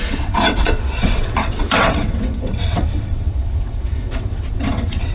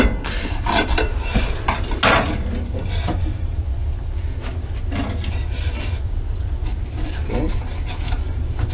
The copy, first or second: first